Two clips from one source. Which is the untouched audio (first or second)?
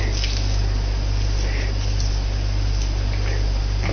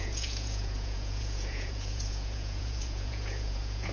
first